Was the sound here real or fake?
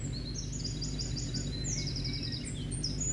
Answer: real